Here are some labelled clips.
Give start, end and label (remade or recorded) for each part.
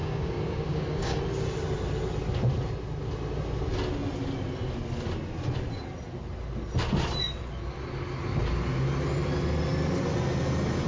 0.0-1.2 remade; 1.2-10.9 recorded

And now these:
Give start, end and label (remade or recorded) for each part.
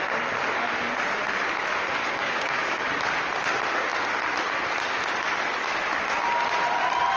0.0-2.0 recorded; 2.0-2.8 remade; 2.8-7.2 recorded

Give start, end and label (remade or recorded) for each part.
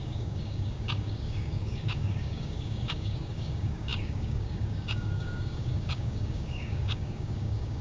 0.0-7.8 remade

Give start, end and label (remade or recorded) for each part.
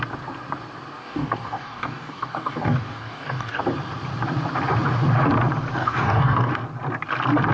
0.0-1.0 recorded; 1.0-3.6 remade; 3.6-5.8 recorded; 5.8-6.5 remade; 6.5-7.5 recorded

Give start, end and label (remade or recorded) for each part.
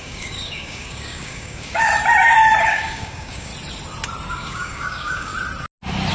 0.0-1.9 remade; 1.9-2.6 recorded; 2.6-3.5 remade; 3.5-4.3 recorded; 4.3-5.3 remade; 5.3-6.1 recorded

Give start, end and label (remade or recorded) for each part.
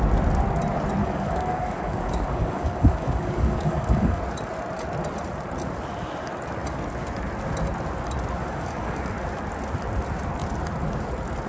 0.0-1.0 recorded; 1.0-4.2 remade; 4.2-8.4 recorded; 8.4-9.1 remade; 9.1-11.5 recorded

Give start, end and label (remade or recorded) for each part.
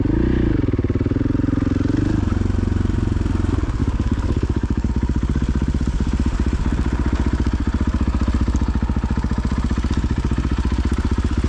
0.0-3.8 recorded; 3.8-4.9 remade; 4.9-11.5 recorded